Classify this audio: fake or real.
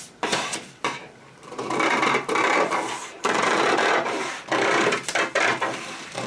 fake